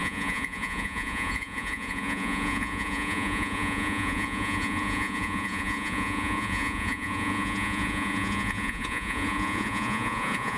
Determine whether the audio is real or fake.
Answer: fake